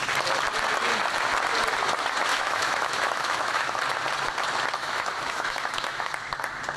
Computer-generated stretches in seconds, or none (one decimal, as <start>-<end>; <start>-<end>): 2.3-3.8; 4.8-6.1